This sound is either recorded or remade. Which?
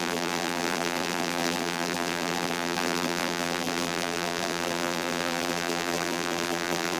remade